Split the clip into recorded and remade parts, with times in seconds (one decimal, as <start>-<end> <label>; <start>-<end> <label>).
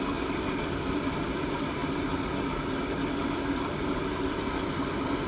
0.0-5.3 recorded